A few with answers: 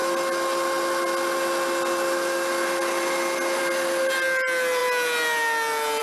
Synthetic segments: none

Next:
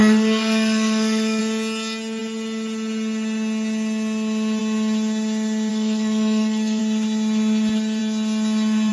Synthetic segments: 0.0-1.4 (codec, SNAC); 5.7-6.8

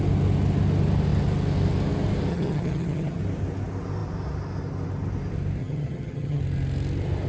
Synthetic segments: 2.3-3.2 (vocoder, HiFi-GAN); 5.6-6.4

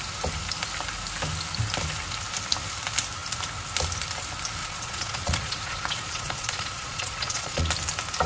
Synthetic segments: 4.6-7.7 (vocoder, Vocos)

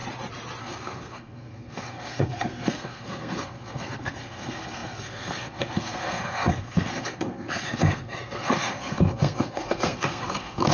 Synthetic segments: 0.6-10.7 (codec, SNAC)

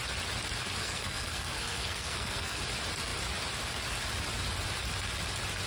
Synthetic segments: 0.8-2.6 (codec, SNAC)

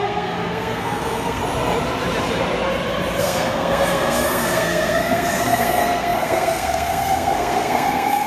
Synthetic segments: 0.0-1.4 (codec, SNAC); 3.2-8.3